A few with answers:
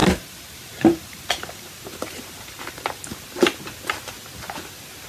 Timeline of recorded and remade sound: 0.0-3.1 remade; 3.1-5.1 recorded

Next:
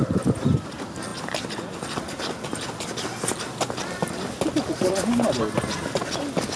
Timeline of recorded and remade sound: 0.0-6.6 recorded

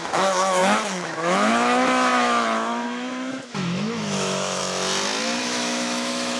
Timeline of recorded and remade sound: 0.0-4.6 remade; 4.6-5.4 recorded; 5.4-6.4 remade

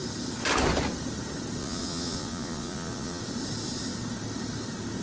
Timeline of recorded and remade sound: 0.0-1.6 recorded; 1.6-3.2 remade; 3.2-5.0 recorded

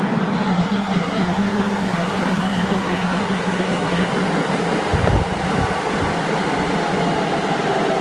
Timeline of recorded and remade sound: 0.0-0.5 recorded; 0.5-4.1 remade; 4.1-8.0 recorded

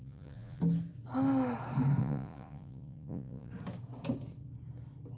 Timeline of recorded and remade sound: 0.0-0.6 remade; 0.6-2.0 recorded; 2.0-3.5 remade; 3.5-5.2 recorded

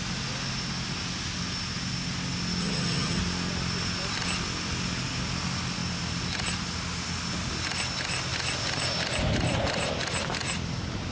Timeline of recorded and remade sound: 0.0-2.6 recorded; 2.6-3.2 remade; 3.2-11.1 recorded